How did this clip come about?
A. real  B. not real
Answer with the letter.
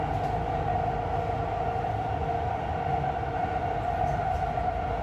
A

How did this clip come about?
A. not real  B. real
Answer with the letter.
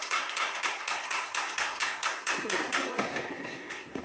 A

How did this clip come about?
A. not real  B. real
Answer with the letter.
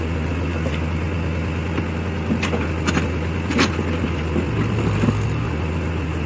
B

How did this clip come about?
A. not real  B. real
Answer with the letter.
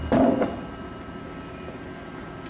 B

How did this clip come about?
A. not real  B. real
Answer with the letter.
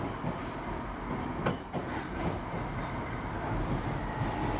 B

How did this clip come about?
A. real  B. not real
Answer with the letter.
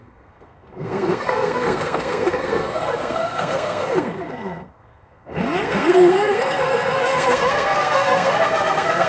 B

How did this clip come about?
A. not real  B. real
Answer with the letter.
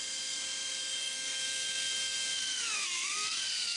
A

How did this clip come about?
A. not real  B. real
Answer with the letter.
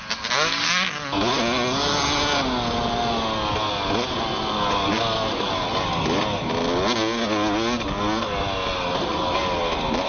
B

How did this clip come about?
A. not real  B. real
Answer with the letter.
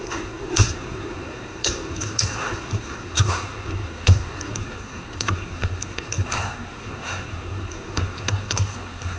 A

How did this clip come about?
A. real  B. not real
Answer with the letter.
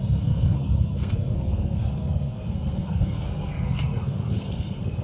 B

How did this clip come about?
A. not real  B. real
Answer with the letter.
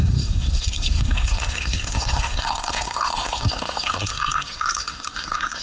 A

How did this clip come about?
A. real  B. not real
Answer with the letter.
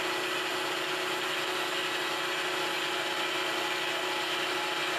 A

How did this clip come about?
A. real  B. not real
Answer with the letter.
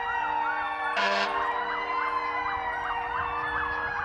A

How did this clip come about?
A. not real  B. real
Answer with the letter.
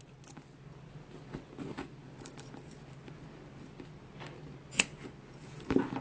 B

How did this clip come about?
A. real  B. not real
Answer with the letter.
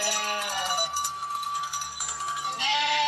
B